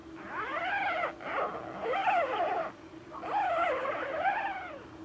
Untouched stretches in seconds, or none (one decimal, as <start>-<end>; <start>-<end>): 0.0-5.0